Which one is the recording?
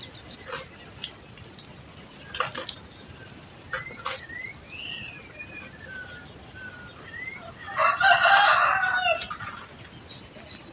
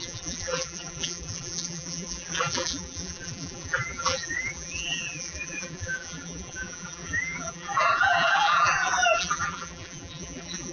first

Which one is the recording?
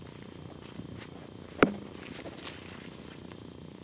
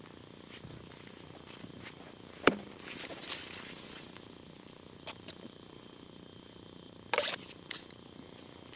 first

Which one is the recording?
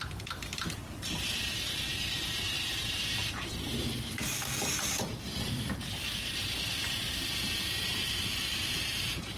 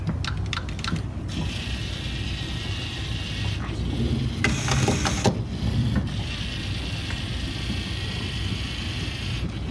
second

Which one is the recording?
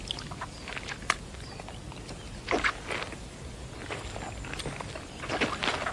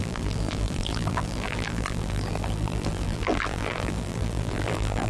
first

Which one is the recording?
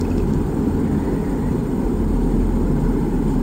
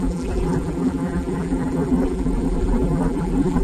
first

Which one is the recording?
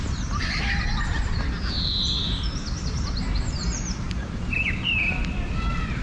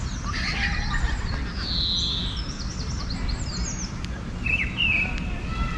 second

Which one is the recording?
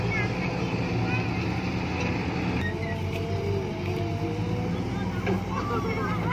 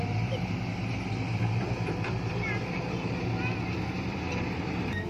first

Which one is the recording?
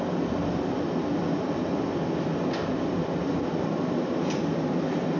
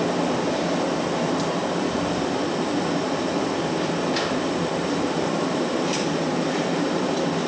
first